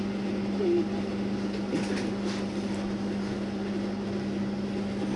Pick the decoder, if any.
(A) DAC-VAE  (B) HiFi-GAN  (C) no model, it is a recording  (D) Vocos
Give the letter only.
C